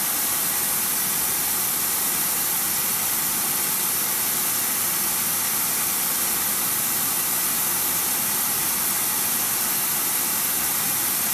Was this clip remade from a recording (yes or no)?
no